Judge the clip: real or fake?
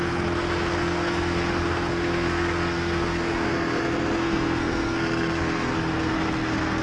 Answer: fake